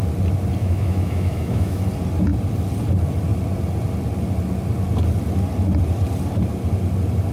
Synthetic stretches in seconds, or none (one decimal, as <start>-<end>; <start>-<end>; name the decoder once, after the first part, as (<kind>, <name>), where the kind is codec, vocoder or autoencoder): 0.6-1.8 (autoencoder, DAC-VAE)